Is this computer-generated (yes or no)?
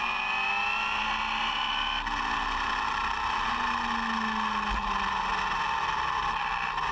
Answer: no